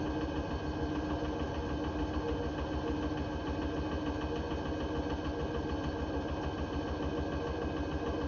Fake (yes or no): no